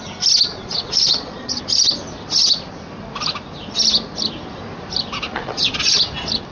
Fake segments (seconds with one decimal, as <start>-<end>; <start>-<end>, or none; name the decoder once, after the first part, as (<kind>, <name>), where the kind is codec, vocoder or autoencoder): 0.5-1.6 (vocoder, Vocos); 5.3-6.0